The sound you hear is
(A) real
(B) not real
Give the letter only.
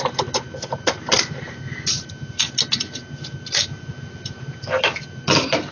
A